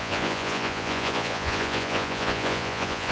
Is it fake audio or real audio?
fake